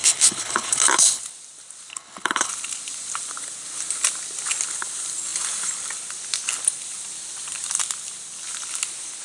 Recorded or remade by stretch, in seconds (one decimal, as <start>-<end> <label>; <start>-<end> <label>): 0.0-1.2 remade; 1.2-1.9 recorded; 1.9-2.5 remade; 2.5-9.2 recorded